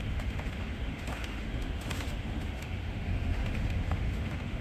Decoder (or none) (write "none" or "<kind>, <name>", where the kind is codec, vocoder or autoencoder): autoencoder, DAC-VAE